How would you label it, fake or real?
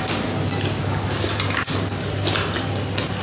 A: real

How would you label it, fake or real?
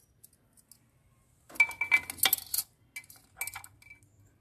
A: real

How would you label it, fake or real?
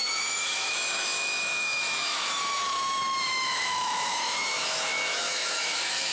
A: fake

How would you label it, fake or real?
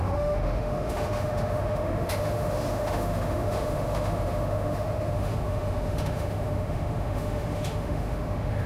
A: fake